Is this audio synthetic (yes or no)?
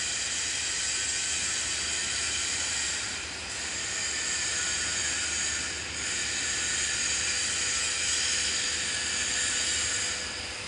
no